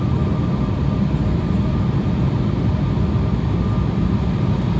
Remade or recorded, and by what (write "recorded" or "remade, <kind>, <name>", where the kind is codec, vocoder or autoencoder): recorded